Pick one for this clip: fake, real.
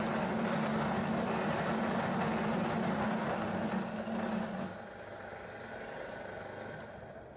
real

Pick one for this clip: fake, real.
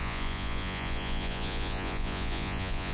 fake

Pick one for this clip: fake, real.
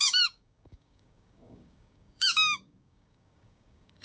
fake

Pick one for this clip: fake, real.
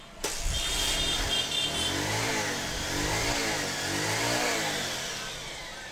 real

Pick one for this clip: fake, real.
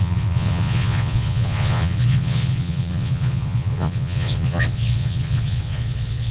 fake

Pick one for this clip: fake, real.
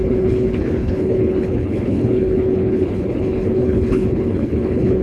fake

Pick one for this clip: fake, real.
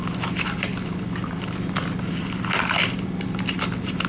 real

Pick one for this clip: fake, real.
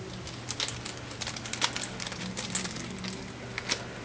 real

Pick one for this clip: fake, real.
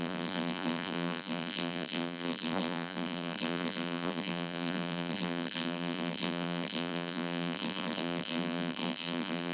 fake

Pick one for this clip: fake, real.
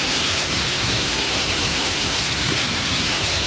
fake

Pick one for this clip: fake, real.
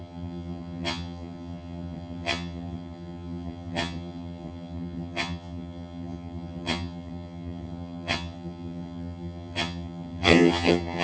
fake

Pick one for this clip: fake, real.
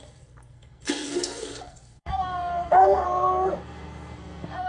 fake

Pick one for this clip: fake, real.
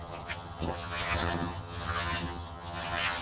fake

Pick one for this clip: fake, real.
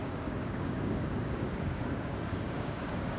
fake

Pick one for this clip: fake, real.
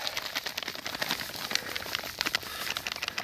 real